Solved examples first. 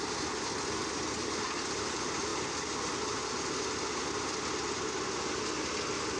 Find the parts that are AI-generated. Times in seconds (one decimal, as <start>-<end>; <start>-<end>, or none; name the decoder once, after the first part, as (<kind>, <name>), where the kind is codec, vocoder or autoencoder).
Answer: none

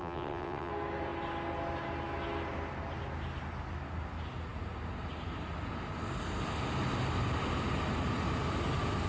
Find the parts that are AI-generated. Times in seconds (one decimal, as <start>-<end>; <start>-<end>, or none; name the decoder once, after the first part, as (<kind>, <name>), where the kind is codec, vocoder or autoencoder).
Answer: 0.0-0.7 (vocoder, WaveNeXt)

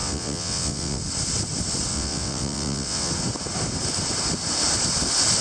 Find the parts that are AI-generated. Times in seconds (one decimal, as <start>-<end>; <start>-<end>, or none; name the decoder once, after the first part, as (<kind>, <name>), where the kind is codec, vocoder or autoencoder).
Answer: 0.0-1.0 (vocoder, WaveNeXt); 1.9-3.1

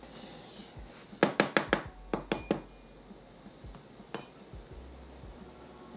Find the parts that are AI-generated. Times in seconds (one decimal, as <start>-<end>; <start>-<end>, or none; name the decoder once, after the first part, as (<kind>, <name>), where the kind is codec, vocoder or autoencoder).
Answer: none

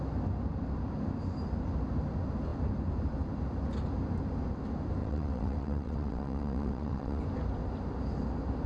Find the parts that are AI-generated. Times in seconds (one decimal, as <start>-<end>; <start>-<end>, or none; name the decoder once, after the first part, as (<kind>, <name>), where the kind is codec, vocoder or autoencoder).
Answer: 5.0-7.2 (vocoder, WaveNeXt)

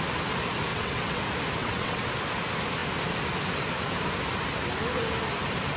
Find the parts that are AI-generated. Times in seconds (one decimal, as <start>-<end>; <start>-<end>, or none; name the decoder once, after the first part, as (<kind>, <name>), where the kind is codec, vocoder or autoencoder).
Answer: 0.7-1.2 (vocoder, WaveNeXt); 1.6-2.1